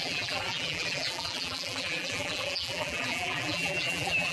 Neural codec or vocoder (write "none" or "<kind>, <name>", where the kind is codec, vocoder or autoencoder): vocoder, BigVGAN v2